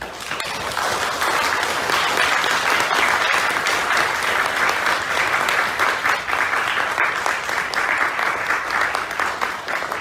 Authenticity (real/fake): real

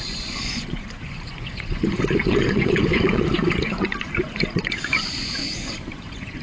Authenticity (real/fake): fake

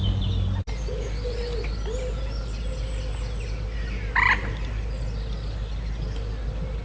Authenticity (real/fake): real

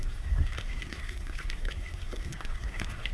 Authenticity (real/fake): fake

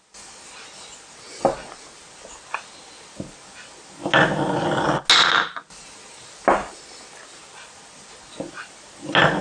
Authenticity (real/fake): real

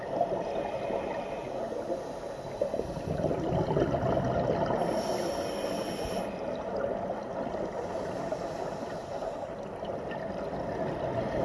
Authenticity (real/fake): real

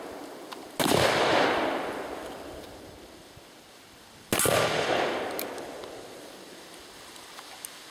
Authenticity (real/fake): real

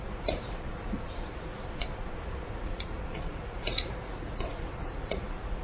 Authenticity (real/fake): fake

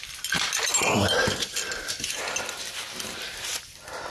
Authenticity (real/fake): real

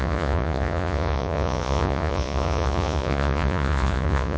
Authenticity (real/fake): fake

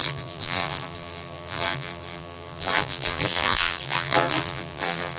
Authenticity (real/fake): fake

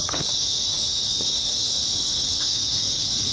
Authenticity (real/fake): fake